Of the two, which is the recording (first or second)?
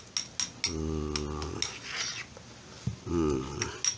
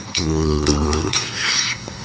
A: first